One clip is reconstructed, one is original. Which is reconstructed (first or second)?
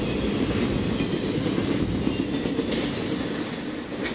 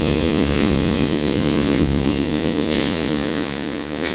second